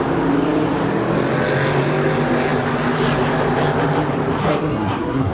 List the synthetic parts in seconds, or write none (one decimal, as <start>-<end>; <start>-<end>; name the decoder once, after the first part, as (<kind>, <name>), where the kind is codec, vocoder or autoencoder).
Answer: 4.4-5.3 (codec, SNAC)